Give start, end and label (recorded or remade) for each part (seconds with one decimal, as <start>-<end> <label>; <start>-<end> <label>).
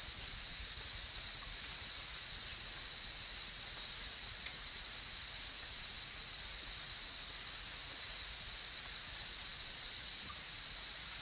0.0-11.2 remade